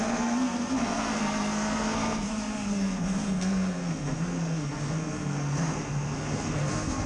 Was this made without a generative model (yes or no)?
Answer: no